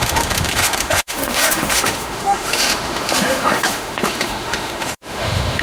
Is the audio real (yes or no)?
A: no